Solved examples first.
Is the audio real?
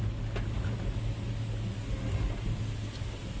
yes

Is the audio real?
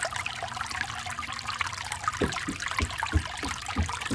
yes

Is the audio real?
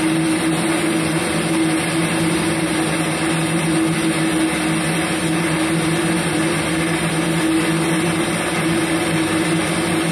yes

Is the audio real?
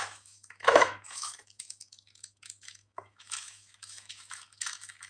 no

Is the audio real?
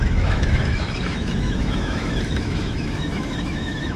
no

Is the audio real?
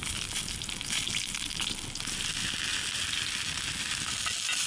yes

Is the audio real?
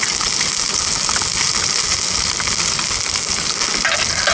yes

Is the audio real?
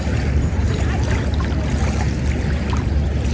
yes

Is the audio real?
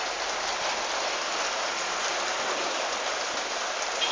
yes